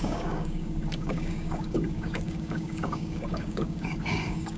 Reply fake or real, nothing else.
fake